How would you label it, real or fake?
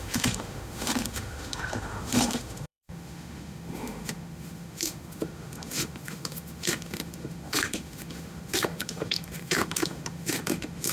fake